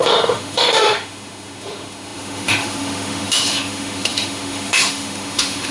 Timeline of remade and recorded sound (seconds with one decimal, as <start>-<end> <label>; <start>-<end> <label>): 0.0-5.7 remade